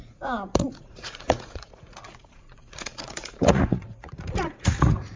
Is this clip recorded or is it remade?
remade